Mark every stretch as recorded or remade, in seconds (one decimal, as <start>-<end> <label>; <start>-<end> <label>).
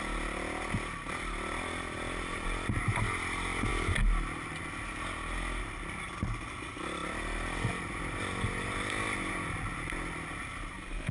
0.0-11.1 recorded